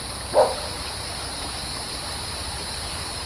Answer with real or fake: real